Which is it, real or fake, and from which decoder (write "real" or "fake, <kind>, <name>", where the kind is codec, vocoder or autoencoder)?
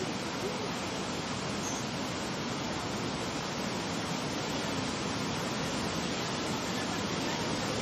real